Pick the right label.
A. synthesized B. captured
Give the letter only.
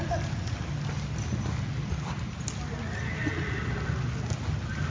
B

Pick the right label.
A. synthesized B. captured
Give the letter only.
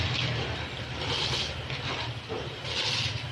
B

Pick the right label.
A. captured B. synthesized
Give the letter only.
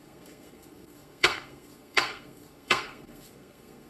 B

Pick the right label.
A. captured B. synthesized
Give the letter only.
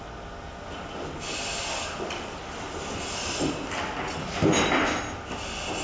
A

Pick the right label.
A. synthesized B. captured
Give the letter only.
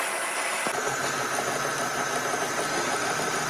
B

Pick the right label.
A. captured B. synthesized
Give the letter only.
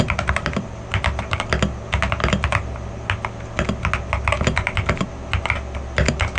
A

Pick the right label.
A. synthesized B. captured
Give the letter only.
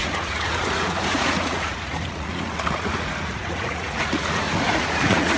A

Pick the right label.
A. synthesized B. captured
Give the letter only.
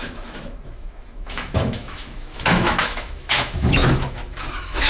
A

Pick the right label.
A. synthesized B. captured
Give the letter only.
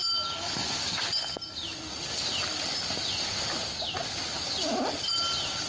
B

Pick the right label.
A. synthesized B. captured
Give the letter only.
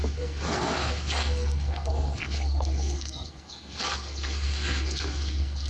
A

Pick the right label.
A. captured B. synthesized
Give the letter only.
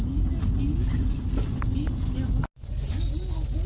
A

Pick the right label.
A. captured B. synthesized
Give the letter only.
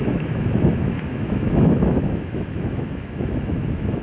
B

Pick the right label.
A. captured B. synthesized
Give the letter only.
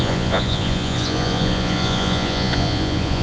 B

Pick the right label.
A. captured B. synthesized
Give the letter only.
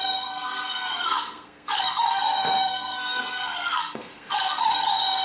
B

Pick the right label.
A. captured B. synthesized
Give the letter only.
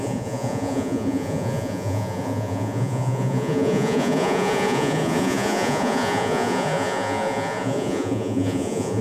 B